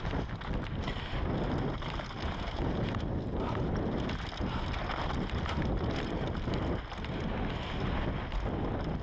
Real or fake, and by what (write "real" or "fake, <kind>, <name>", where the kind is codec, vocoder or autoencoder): real